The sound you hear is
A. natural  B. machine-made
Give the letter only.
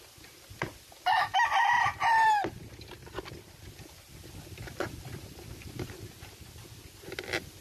B